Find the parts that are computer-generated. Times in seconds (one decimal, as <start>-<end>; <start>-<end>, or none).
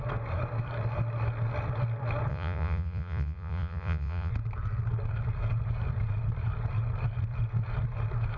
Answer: 2.3-4.3